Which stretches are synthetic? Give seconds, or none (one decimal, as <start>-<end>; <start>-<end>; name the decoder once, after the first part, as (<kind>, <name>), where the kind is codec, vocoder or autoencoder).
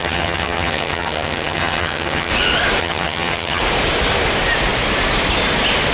0.0-2.3 (vocoder, HiFi-GAN); 2.8-3.6